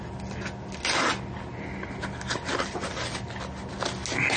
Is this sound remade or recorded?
recorded